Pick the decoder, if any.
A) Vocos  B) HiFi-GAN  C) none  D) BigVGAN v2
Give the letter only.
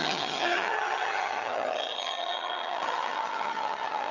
B